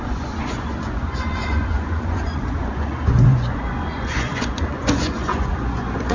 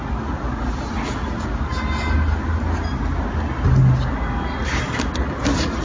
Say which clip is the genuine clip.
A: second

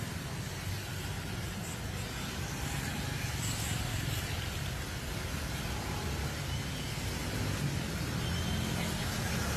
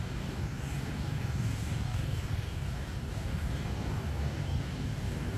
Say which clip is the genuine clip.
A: first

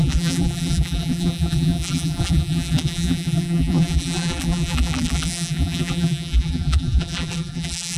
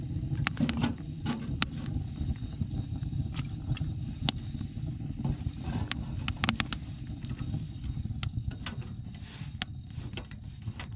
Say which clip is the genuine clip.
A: second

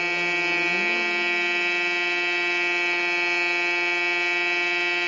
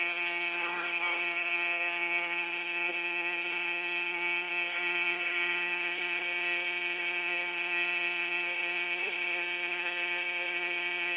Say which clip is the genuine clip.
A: first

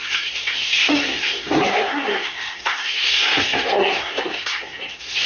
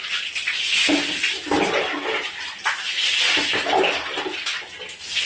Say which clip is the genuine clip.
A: second